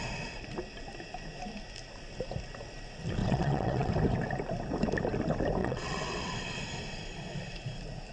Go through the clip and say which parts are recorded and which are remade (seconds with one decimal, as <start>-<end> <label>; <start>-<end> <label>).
0.0-3.2 recorded; 3.2-3.9 remade; 3.9-5.6 recorded; 5.6-6.6 remade; 6.6-8.1 recorded